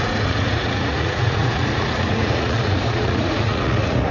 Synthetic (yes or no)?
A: yes